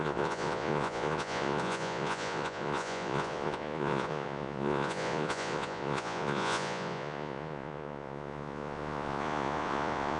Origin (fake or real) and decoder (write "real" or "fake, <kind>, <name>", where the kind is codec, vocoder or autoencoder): fake, vocoder, Vocos